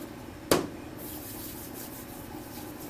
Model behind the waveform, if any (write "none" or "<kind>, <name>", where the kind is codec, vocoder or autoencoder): none